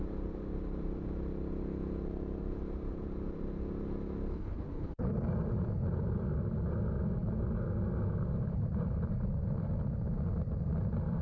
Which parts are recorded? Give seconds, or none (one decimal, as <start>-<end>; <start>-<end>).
0.0-4.3; 5.1-11.2